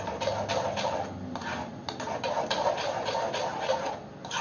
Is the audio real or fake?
real